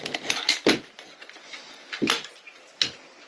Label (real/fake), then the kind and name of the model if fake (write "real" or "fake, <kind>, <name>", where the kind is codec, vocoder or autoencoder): real